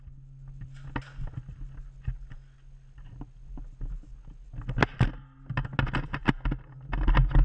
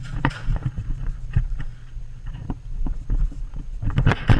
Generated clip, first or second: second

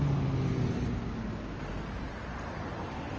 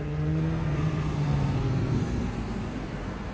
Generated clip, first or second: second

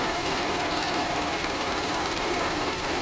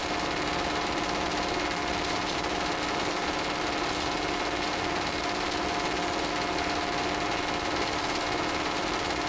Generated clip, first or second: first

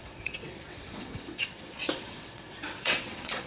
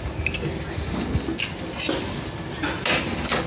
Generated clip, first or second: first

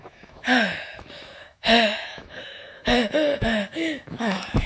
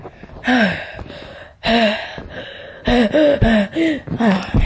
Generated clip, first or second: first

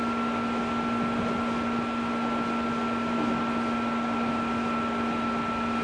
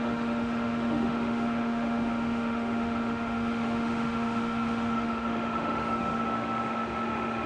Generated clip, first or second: second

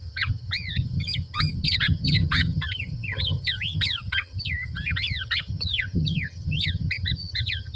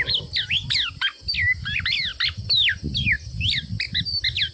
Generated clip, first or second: first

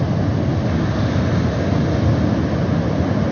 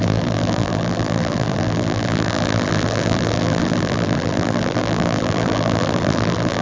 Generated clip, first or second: second